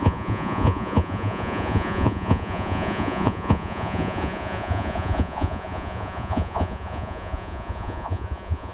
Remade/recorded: remade